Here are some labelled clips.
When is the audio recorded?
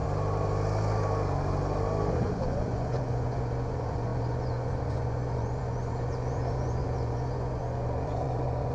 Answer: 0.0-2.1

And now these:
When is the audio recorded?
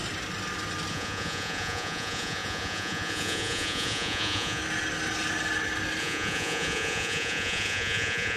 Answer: 0.0-0.9; 4.6-6.0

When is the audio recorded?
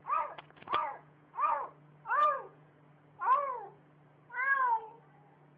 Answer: 1.7-2.2; 2.7-5.6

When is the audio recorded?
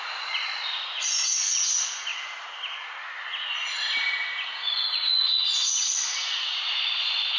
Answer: 2.1-4.5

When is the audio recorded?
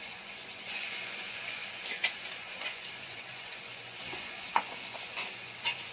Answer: none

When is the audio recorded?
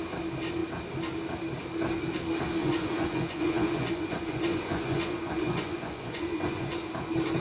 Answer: 0.0-2.6; 6.9-7.4